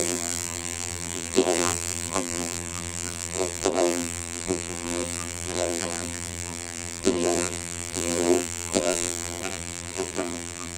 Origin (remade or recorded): remade